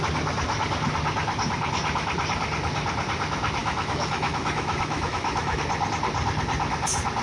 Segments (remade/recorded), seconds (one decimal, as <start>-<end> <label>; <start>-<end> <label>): 0.0-3.6 recorded; 3.6-5.6 remade; 5.6-7.2 recorded